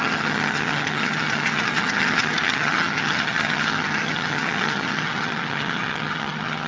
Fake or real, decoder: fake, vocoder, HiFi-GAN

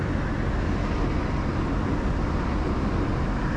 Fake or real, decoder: real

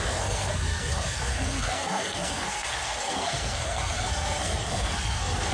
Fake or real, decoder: fake, codec, SNAC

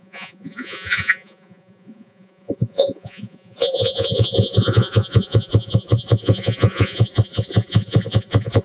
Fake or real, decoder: fake, vocoder, Vocos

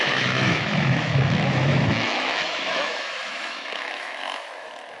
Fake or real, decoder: fake, autoencoder, DAC-VAE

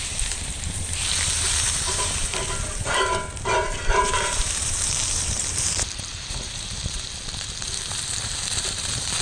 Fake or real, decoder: fake, vocoder, BigVGAN v2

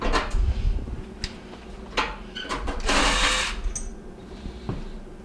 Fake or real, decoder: real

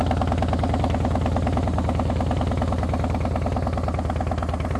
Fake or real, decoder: real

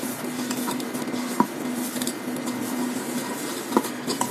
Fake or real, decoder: real